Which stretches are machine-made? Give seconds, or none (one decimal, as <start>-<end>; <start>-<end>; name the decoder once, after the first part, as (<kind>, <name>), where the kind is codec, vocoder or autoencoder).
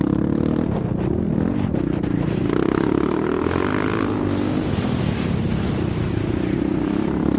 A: none